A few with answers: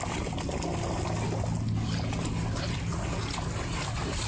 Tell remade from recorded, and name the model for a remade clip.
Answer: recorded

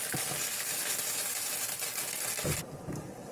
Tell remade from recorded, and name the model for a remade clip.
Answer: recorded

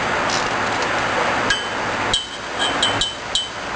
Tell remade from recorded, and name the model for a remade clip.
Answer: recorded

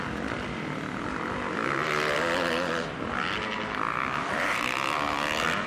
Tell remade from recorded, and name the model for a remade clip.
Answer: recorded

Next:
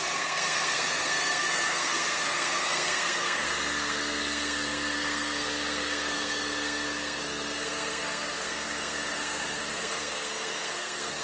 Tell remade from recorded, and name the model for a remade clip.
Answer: remade, codec, SNAC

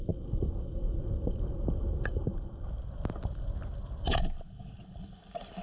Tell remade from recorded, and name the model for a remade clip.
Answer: recorded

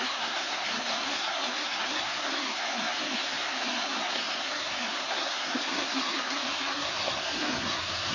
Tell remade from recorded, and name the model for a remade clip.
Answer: remade, codec, SNAC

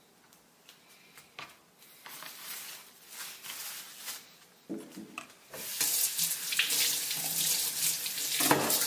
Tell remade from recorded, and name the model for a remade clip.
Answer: recorded